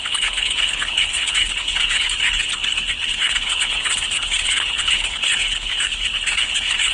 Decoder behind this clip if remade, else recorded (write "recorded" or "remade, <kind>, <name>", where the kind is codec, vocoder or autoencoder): remade, codec, HILCodec